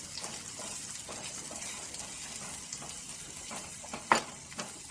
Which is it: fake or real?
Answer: real